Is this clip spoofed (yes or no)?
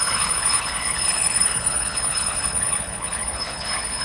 yes